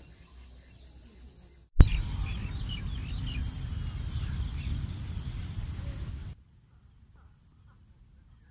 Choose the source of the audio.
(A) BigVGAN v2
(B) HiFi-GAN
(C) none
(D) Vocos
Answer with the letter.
C